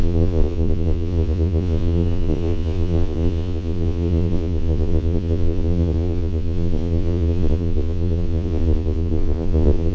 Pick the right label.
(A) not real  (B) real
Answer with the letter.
A